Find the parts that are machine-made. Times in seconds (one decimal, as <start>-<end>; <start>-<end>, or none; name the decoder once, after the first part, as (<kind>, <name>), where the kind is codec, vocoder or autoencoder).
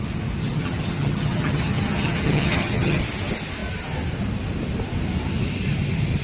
0.4-3.0 (vocoder, HiFi-GAN)